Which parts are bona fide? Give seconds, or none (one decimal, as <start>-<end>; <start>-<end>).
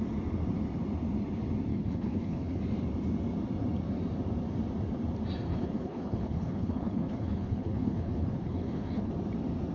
0.0-1.7; 2.6-5.5; 9.1-9.7